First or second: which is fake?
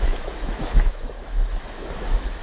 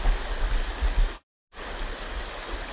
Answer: first